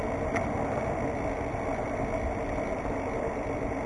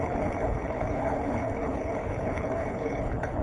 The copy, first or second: second